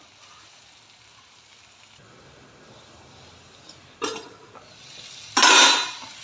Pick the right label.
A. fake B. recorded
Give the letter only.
B